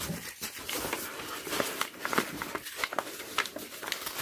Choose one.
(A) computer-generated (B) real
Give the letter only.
B